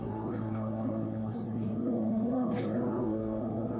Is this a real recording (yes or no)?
no